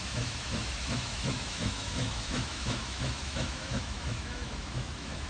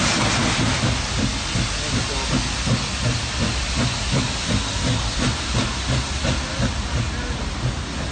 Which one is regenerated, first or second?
first